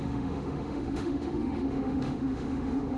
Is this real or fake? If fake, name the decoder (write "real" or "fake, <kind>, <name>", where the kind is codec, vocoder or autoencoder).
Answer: fake, autoencoder, DAC-VAE